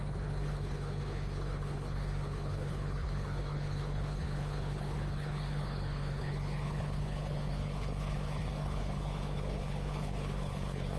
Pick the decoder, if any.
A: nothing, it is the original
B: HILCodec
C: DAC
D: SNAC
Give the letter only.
B